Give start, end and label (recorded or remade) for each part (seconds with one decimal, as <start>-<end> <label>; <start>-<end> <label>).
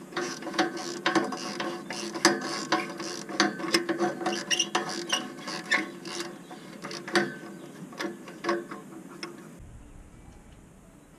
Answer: 0.0-0.8 remade; 0.8-11.2 recorded